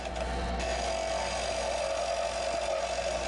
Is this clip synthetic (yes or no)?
no